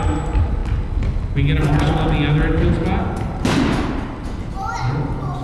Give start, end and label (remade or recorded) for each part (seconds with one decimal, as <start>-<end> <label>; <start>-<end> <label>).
0.0-5.4 recorded